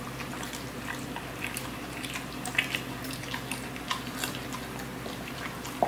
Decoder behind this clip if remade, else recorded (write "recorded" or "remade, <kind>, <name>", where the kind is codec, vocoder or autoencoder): recorded